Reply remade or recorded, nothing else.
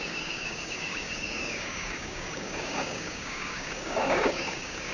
remade